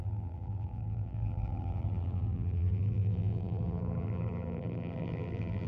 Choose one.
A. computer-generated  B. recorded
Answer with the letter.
A